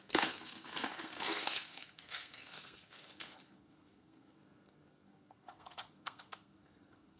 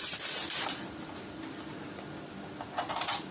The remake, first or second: first